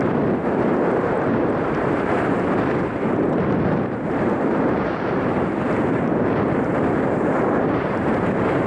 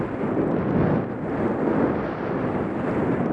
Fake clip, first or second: first